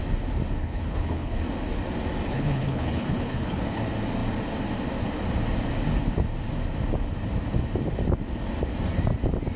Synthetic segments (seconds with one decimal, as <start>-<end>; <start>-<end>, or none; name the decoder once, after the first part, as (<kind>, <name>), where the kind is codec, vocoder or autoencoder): 0.6-1.4 (codec, HILCodec); 2.3-3.8